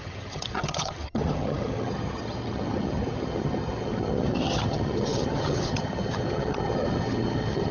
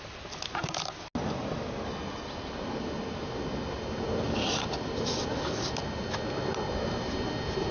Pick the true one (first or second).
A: second